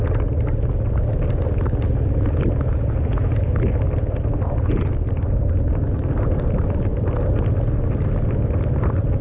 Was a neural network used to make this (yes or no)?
no